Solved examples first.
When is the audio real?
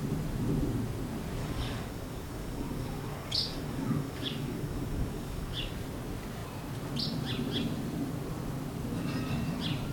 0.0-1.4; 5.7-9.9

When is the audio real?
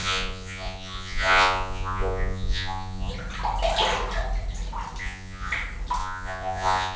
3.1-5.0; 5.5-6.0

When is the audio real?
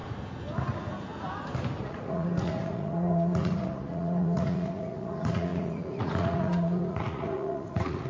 0.0-1.8